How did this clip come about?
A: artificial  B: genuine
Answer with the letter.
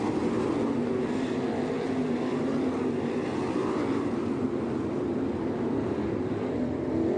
B